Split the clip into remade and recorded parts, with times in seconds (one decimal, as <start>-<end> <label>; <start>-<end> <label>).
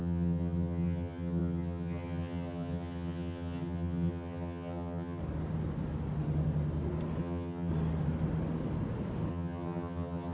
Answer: 0.0-5.2 remade; 5.2-7.2 recorded; 7.2-7.7 remade; 7.7-9.3 recorded; 9.3-10.3 remade